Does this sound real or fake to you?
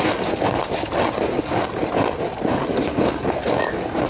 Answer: real